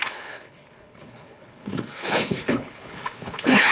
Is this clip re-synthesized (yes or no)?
yes